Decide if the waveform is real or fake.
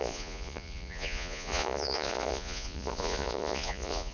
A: fake